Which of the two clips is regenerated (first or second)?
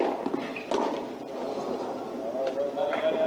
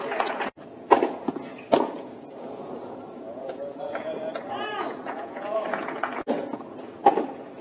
second